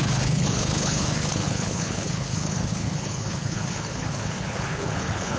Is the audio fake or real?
fake